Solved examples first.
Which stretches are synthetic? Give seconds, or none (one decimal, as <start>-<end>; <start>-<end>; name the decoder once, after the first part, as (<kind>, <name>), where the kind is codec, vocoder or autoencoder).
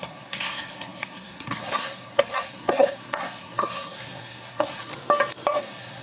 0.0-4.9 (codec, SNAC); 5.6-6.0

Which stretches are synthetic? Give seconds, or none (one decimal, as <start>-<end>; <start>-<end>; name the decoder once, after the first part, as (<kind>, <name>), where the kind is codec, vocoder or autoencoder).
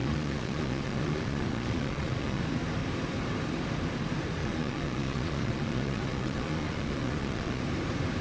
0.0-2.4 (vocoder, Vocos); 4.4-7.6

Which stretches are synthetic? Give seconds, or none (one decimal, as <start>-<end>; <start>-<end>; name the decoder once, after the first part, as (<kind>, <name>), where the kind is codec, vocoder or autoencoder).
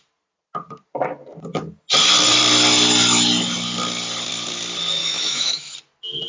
5.0-5.6 (autoencoder, DAC-VAE)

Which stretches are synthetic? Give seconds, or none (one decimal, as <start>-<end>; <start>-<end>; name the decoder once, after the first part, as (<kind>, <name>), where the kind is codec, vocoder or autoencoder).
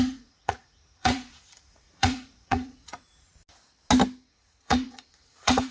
0.0-3.3 (vocoder, Vocos); 4.3-5.7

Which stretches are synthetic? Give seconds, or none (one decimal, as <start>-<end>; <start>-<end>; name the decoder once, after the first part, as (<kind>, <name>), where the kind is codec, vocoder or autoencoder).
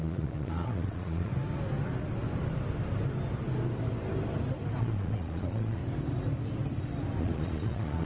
0.0-1.3 (vocoder, Vocos); 4.8-5.8; 7.2-8.0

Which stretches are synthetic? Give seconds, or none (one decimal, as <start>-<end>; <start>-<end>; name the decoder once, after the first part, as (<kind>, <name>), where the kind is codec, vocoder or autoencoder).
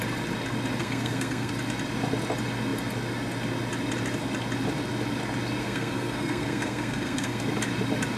0.8-1.5 (codec, SNAC); 5.6-7.4